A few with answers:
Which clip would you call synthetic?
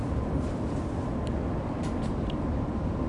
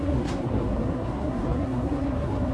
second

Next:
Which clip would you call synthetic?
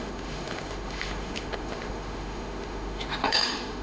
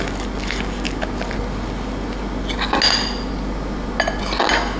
first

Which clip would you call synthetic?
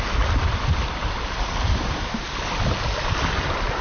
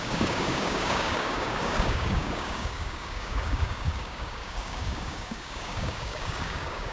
second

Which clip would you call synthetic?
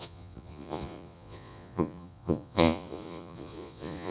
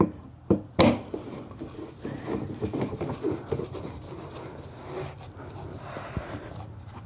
first